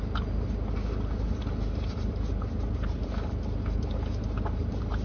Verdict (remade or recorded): recorded